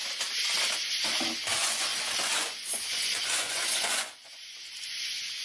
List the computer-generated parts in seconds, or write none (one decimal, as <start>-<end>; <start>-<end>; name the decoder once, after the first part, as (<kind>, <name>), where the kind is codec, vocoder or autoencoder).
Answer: 1.5-4.7 (vocoder, Vocos)